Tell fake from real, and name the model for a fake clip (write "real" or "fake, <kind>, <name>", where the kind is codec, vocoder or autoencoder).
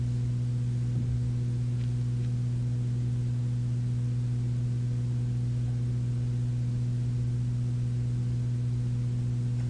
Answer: real